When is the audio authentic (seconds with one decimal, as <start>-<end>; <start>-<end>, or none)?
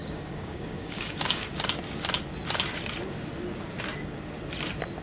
1.5-5.0